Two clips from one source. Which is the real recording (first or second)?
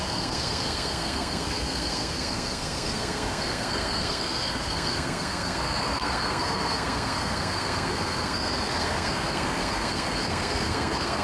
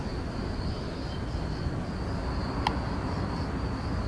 second